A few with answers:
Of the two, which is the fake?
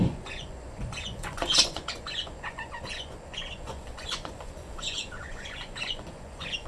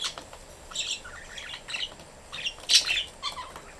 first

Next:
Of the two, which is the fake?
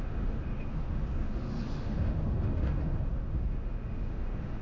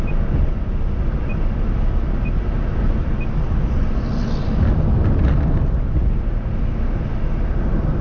first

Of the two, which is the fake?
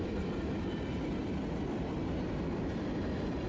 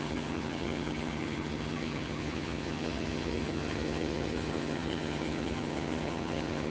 second